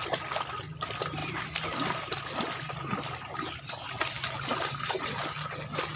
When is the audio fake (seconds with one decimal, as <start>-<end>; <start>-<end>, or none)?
0.0-0.6; 1.2-3.6; 4.5-5.0